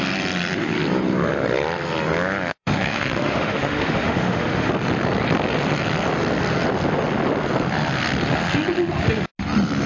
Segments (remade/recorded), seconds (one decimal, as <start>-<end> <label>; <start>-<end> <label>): 0.0-2.5 recorded; 2.5-4.7 remade; 4.7-9.9 recorded